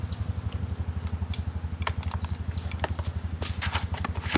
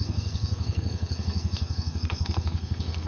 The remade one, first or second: second